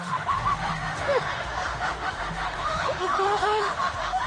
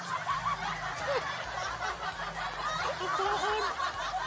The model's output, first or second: first